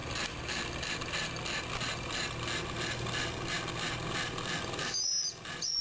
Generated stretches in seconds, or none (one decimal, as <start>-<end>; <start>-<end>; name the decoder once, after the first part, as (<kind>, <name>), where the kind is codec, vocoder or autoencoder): none